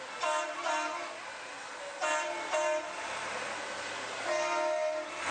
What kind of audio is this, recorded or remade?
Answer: recorded